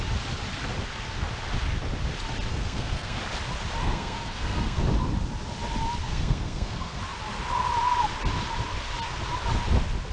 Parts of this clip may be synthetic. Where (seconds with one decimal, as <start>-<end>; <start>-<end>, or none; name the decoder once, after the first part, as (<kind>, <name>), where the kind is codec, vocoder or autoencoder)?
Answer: 2.5-3.2 (codec, SNAC); 3.8-4.8; 6.0-7.0